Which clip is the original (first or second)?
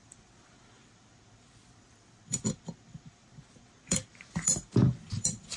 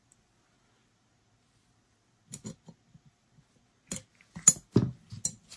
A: second